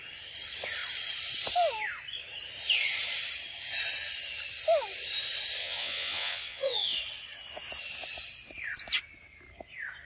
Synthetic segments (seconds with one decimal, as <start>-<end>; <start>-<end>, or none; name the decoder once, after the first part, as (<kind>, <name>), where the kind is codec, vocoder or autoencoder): 5.6-7.0 (vocoder, WaveNeXt)